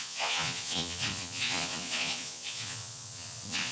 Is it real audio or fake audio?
fake